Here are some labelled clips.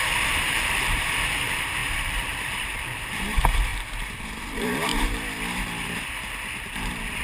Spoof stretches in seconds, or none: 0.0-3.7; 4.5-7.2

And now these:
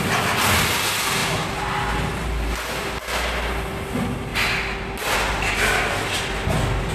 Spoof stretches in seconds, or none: none

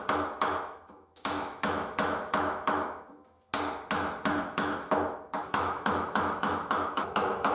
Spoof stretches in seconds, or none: 0.0-3.5; 4.4-7.5

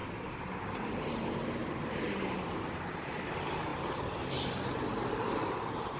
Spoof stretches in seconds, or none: 0.0-3.7; 5.5-6.0

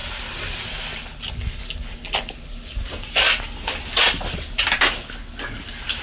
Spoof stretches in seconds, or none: none

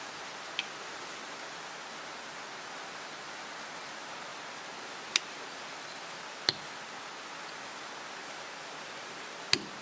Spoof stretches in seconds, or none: 8.2-9.4